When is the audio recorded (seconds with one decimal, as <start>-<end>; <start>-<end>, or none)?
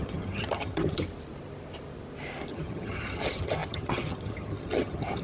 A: 1.0-2.5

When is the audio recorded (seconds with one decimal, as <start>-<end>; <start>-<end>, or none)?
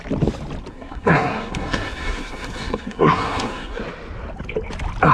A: 0.0-0.7; 3.8-5.1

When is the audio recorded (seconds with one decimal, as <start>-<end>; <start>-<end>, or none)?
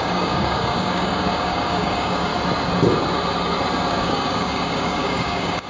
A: 2.3-3.9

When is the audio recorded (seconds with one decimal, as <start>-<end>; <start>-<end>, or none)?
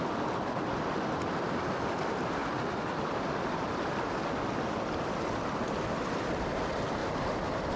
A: 0.0-2.4; 6.4-7.0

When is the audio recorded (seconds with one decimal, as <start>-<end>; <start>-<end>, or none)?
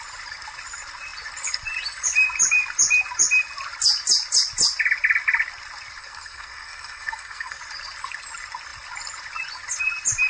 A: 0.0-6.0; 7.6-10.3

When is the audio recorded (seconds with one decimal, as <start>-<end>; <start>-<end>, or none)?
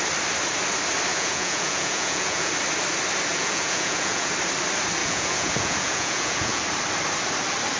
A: 0.0-1.1; 2.5-3.3; 4.3-5.0; 6.6-7.8